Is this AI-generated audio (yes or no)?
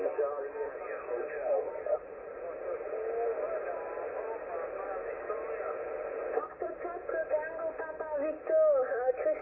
no